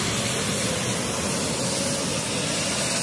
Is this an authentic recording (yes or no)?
yes